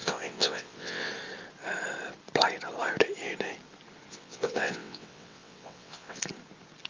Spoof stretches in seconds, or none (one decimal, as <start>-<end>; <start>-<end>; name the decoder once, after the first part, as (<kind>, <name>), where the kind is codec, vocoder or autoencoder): 0.0-1.1 (vocoder, WaveNeXt); 4.1-6.2